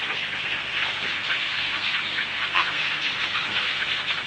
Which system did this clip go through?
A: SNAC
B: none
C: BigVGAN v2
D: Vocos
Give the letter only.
A